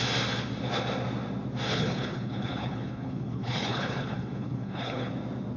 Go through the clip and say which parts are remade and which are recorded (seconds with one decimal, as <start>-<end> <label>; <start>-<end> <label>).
0.0-1.7 recorded; 1.7-5.1 remade; 5.1-5.6 recorded